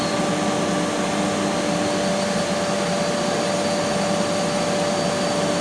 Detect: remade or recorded recorded